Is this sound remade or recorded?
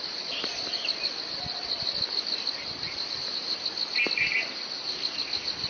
recorded